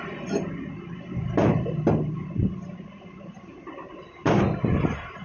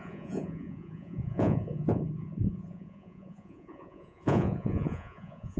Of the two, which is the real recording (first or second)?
first